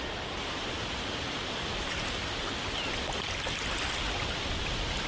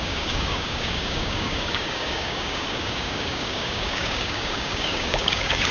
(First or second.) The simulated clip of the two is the second